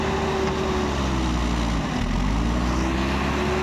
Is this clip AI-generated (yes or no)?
no